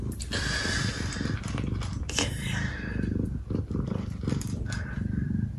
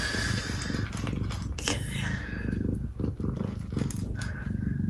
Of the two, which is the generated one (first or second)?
first